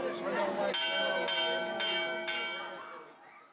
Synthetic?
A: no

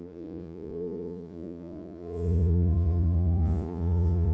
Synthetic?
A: yes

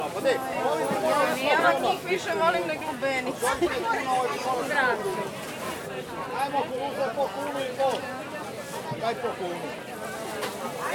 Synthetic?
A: no